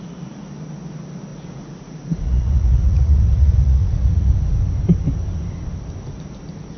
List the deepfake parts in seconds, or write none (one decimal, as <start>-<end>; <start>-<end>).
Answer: 1.3-4.3